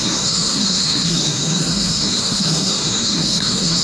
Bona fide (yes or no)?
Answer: no